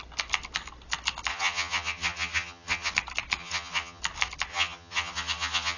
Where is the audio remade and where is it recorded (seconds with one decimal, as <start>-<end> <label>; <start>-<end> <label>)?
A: 0.0-1.3 recorded; 1.3-2.9 remade; 2.9-3.4 recorded; 3.4-4.0 remade; 4.0-4.5 recorded; 4.5-5.8 remade